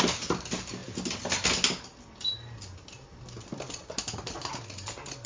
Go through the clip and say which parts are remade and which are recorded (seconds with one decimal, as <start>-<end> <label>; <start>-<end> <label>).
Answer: 0.0-5.3 recorded